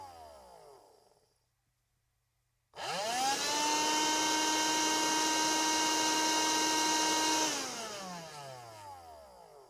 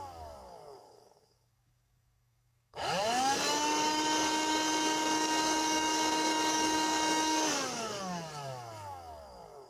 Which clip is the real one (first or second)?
first